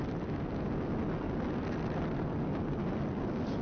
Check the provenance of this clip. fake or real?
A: real